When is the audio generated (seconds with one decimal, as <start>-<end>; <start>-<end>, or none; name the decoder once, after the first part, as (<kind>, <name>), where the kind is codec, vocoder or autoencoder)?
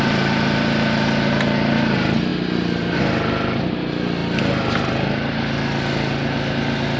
none